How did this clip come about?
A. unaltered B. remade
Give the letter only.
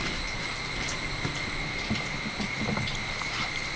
A